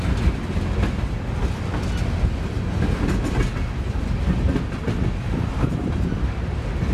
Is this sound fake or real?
real